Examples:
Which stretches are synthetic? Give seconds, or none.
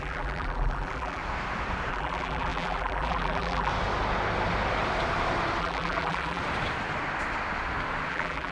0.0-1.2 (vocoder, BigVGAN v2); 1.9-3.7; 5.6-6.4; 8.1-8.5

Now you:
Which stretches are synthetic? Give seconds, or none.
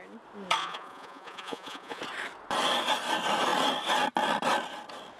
0.6-2.0 (vocoder, Vocos)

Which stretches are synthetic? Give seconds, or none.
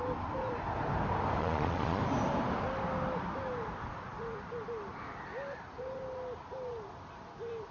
1.4-2.0 (vocoder, Vocos)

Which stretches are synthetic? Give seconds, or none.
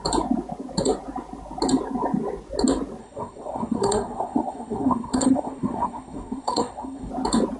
3.0-7.1 (codec, SNAC)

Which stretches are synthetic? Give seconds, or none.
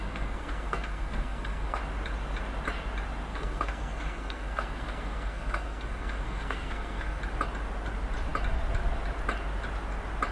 0.0-1.8 (codec, SNAC); 3.3-7.2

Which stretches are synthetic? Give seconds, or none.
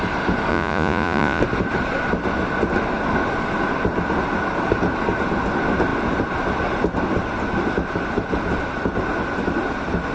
0.5-1.4 (vocoder, Vocos)